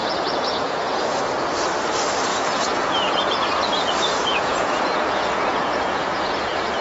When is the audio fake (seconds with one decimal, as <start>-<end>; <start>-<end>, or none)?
0.0-1.0; 2.3-6.8